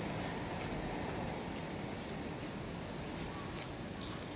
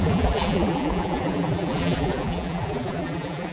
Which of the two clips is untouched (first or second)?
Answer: first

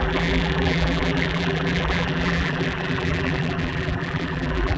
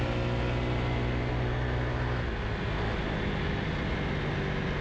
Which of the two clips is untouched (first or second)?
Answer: second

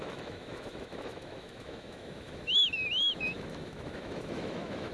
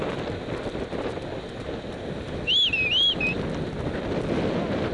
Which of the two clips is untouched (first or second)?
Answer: second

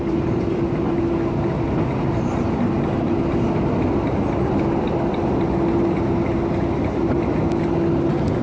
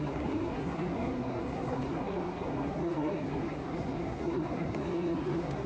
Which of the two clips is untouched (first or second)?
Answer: first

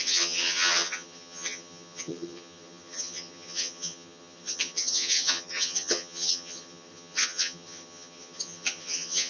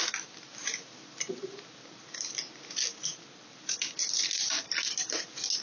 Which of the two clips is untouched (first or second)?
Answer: second